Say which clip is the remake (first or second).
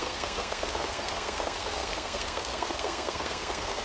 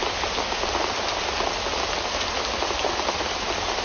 first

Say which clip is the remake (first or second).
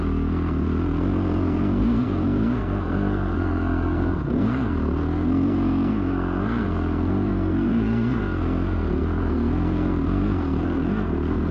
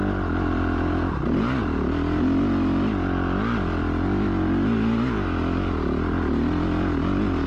first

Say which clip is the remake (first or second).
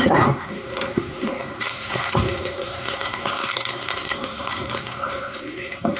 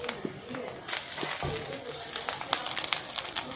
first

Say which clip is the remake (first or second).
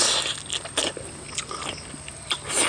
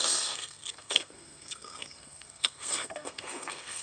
second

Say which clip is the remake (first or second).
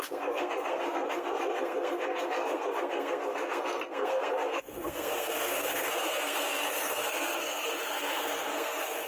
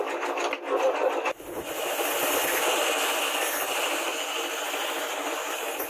first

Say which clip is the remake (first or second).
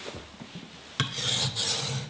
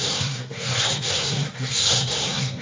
second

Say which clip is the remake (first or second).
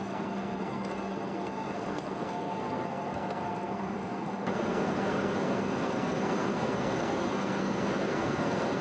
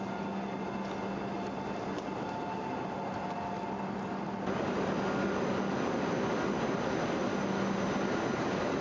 first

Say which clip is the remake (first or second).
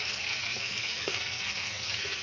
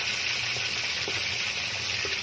first